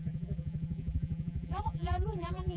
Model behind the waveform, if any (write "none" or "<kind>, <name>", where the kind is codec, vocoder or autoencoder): vocoder, BigVGAN v2